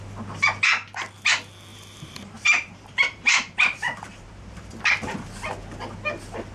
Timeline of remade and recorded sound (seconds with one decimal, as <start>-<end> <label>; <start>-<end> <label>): 0.0-1.7 recorded; 1.7-4.7 remade; 4.7-6.5 recorded